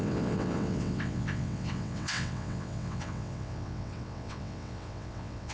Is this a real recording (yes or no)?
no